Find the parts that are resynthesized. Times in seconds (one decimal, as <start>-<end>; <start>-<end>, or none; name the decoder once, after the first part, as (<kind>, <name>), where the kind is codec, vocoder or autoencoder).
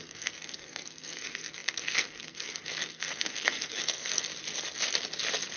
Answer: 0.0-4.3 (codec, SNAC)